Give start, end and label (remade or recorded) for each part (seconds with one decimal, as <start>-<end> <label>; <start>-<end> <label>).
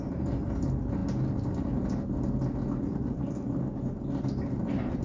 0.0-5.0 recorded